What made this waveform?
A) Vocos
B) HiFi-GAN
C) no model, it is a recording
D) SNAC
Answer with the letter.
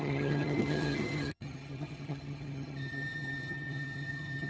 B